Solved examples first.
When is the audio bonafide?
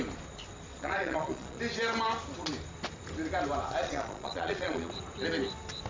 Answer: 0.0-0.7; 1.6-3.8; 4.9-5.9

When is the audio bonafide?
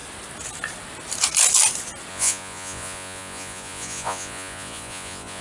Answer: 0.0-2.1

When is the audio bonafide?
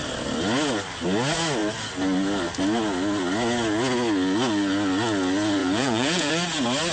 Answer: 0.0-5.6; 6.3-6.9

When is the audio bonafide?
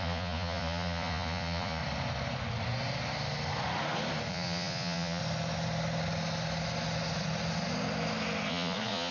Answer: 1.8-4.3; 5.2-8.5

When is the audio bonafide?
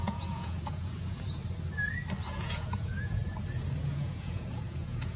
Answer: 1.4-2.3; 3.2-3.8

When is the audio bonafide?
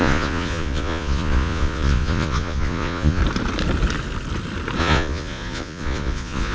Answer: 3.2-4.8